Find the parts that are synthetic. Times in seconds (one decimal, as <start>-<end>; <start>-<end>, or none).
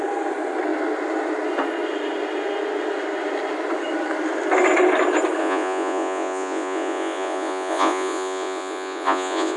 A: 5.4-9.6